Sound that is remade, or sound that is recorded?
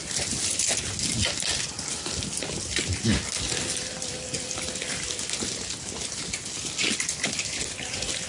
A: recorded